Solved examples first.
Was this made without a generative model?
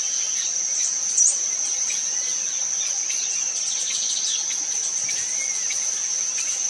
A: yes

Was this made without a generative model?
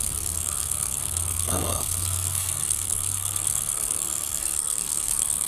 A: no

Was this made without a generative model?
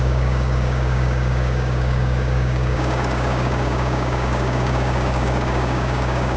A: no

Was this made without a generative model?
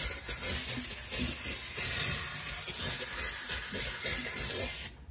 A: yes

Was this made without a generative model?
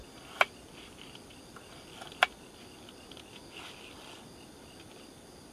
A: yes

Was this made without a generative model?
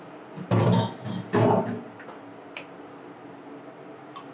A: yes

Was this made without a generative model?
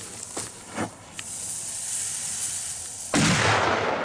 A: yes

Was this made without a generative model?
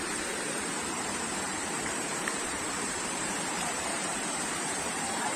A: no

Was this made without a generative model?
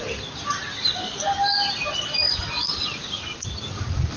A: yes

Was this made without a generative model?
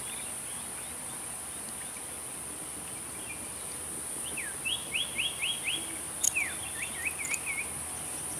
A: yes